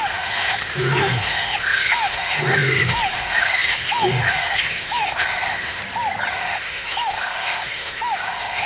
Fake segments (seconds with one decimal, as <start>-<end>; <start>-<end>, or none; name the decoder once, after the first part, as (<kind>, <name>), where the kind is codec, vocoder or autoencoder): 0.0-5.8 (autoencoder, DAC-VAE); 6.3-8.7